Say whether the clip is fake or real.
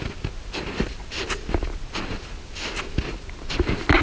real